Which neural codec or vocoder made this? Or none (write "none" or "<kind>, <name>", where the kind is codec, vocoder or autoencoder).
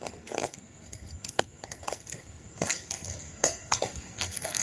codec, SNAC